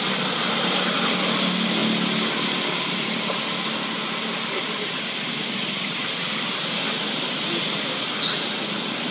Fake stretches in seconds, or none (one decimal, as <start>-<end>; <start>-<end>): none